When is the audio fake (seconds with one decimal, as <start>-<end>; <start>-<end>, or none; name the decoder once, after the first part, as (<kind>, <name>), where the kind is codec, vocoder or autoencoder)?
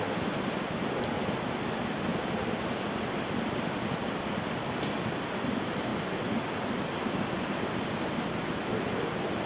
none